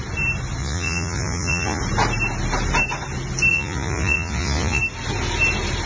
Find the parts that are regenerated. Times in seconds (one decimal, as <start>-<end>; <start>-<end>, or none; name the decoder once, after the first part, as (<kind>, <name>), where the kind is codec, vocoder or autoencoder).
0.6-1.8 (vocoder, Vocos); 3.5-4.8